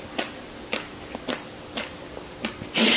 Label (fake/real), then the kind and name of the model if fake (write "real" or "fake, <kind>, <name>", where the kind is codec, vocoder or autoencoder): real